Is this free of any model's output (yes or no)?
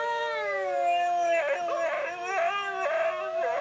yes